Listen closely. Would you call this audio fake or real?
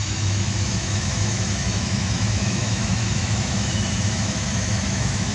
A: fake